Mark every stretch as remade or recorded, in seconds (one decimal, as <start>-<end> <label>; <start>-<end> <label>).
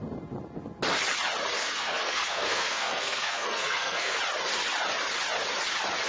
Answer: 0.0-1.6 recorded; 1.6-4.2 remade; 4.2-6.1 recorded